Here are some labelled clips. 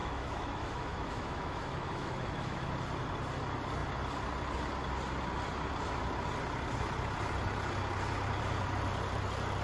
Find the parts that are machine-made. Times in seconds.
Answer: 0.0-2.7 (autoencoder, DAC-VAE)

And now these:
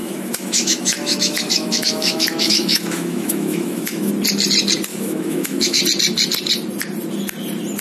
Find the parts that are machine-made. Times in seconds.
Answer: 0.0-4.1 (autoencoder, DAC-VAE); 4.9-5.8

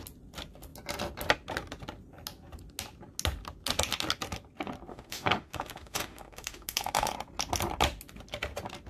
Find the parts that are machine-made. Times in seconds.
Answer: 4.9-7.1 (autoencoder, DAC-VAE)

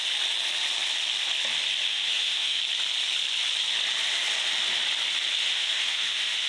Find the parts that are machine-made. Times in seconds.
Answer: 1.9-2.6 (autoencoder, DAC-VAE); 5.4-6.5